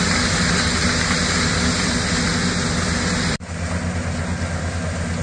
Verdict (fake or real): real